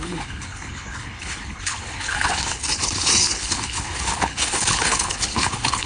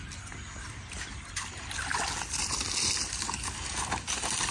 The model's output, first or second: first